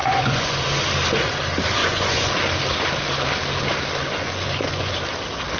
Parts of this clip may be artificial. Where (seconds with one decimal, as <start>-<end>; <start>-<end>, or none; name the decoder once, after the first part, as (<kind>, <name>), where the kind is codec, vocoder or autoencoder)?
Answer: 0.0-0.7 (vocoder, Vocos); 1.8-2.3; 4.1-4.9